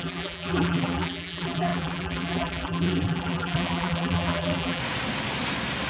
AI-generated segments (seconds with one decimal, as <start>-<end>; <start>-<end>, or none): 0.0-4.8